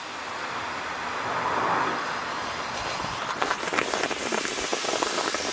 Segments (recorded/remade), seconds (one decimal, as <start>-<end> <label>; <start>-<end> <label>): 0.0-5.5 recorded